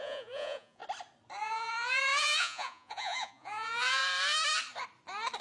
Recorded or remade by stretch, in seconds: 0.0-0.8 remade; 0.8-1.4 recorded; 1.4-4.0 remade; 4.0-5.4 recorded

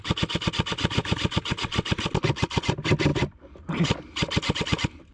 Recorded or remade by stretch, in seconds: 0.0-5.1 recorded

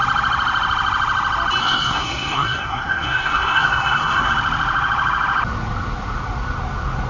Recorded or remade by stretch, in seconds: 0.0-1.6 recorded; 1.6-4.3 remade; 4.3-7.1 recorded

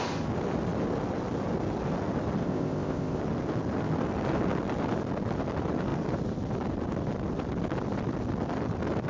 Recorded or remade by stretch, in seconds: 0.0-2.4 recorded; 2.4-3.2 remade; 3.2-9.1 recorded